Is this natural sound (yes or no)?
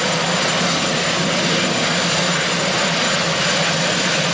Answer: yes